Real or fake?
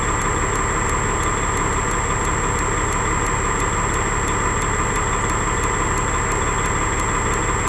real